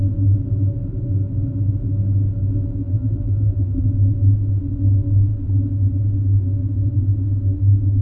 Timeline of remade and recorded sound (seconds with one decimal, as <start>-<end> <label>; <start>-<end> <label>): 0.0-2.8 recorded; 2.8-3.9 remade; 3.9-8.0 recorded